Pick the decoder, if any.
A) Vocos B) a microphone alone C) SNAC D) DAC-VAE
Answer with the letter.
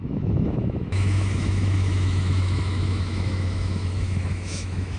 D